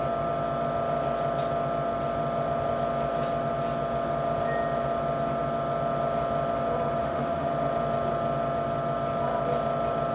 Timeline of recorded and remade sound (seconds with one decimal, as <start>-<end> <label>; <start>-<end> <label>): 0.0-7.0 recorded; 7.0-7.5 remade; 7.5-10.1 recorded